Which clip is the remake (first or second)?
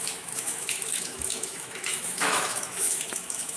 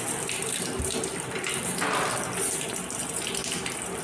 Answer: first